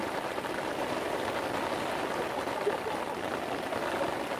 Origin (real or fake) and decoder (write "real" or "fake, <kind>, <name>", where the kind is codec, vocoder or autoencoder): real